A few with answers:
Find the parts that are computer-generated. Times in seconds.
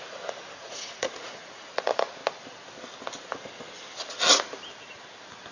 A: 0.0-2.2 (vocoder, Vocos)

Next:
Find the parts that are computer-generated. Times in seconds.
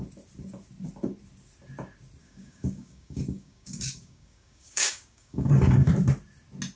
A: 2.2-5.9 (codec, DAC)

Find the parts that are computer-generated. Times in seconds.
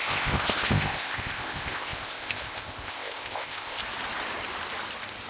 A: 0.0-3.8 (codec, ZipCodec)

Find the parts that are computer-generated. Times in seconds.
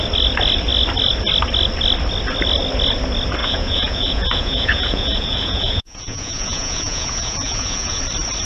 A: 3.4-8.0 (vocoder, Vocos)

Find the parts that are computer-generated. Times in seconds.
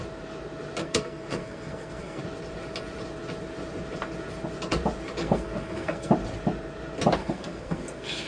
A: 0.8-2.2 (codec, SNAC); 5.2-6.1; 7.2-8.3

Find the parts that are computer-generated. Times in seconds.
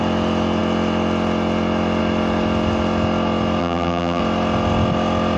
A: 3.6-4.2 (vocoder, BigVGAN v2)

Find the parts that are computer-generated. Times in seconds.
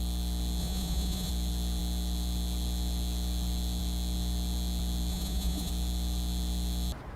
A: 0.6-1.3 (vocoder, Vocos); 5.1-5.7